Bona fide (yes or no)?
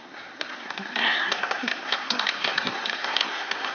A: no